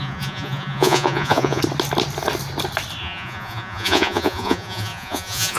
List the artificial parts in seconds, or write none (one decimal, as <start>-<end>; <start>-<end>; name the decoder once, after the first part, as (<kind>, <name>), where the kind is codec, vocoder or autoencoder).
0.0-1.6 (vocoder, Vocos); 3.0-5.6